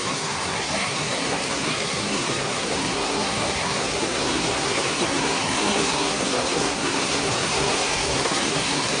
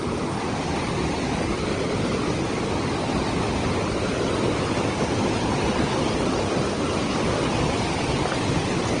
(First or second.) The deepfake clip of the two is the first